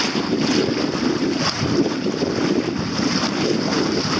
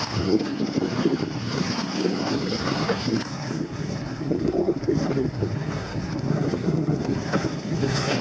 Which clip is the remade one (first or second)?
second